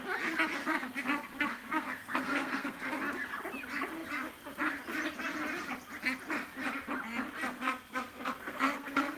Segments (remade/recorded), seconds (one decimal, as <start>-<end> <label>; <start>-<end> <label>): 0.0-0.6 recorded; 0.6-3.0 remade; 3.0-7.5 recorded; 7.5-9.2 remade

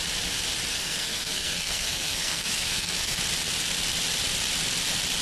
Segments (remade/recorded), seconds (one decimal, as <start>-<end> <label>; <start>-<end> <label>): 0.0-0.7 recorded; 0.7-3.2 remade; 3.2-5.2 recorded

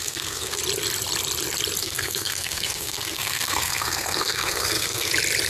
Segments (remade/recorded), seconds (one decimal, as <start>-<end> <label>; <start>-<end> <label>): 0.0-0.6 remade; 0.6-1.8 recorded; 1.8-5.1 remade; 5.1-5.5 recorded